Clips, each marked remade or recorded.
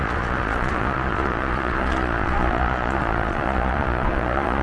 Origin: remade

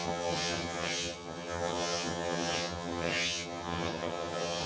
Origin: remade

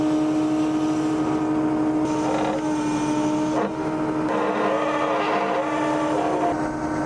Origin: recorded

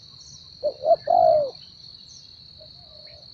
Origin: recorded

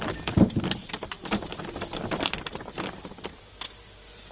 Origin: recorded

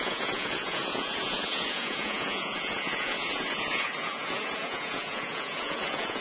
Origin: remade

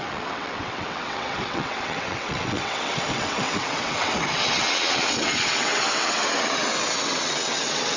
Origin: remade